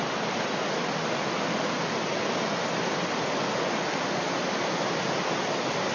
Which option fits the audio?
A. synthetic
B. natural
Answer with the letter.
B